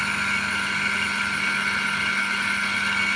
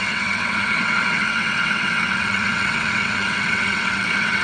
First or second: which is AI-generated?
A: second